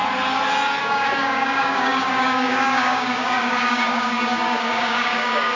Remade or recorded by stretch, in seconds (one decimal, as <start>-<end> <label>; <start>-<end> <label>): 0.0-0.8 recorded; 0.8-5.6 remade